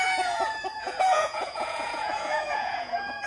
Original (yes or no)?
no